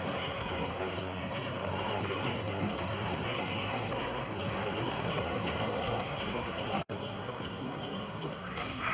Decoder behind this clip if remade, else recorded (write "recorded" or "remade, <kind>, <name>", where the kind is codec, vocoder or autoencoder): remade, codec, SNAC